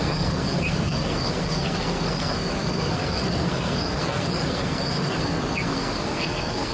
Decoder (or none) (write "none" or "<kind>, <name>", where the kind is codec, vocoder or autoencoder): codec, SNAC